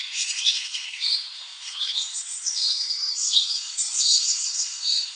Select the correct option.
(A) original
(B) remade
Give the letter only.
B